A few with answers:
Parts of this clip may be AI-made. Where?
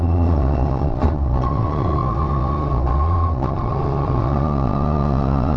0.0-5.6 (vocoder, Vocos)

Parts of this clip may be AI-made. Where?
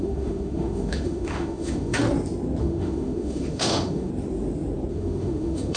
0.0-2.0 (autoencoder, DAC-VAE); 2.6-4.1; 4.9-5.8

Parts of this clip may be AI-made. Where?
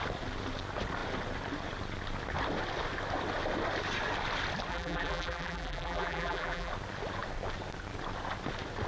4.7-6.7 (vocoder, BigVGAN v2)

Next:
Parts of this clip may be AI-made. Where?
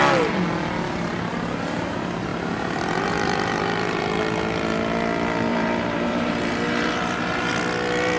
2.3-4.0 (vocoder, BigVGAN v2); 5.5-7.5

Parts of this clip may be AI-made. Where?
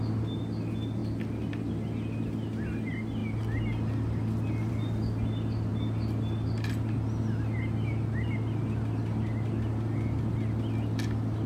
none